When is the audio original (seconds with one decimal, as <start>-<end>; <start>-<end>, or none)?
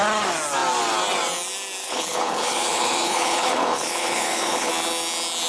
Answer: 0.0-1.8; 4.7-5.5